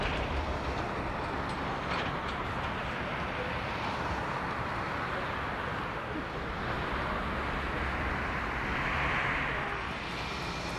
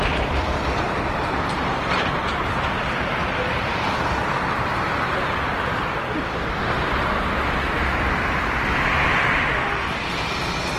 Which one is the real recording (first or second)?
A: first